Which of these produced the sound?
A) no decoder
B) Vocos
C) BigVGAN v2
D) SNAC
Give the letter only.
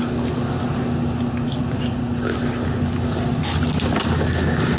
A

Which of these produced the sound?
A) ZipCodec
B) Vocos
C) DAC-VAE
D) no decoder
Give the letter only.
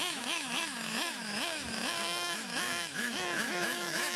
C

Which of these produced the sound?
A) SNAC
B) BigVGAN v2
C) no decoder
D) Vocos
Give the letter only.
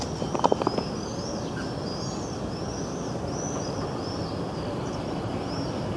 C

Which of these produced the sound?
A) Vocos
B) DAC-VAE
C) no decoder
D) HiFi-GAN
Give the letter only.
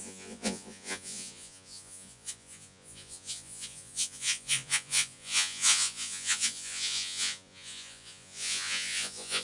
A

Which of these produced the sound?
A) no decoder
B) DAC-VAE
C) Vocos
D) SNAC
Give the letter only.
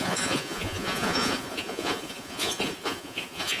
C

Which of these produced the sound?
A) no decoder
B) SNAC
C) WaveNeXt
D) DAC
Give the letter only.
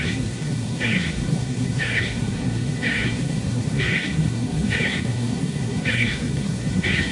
B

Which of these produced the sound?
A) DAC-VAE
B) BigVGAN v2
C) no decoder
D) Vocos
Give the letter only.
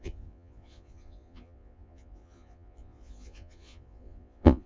D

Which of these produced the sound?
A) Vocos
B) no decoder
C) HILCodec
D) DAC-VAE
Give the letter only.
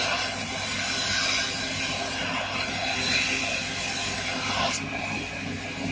B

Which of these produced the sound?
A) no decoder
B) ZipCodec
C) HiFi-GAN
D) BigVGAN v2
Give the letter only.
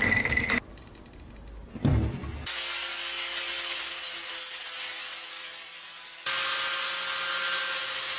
A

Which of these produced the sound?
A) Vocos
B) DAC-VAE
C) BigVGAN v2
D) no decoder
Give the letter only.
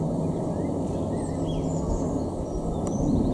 D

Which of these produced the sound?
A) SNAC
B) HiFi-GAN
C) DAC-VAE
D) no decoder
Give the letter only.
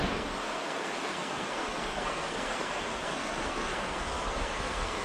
A